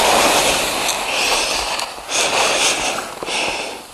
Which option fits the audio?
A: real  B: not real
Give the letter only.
A